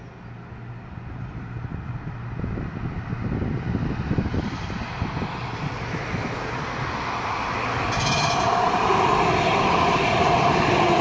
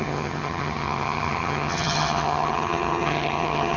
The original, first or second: first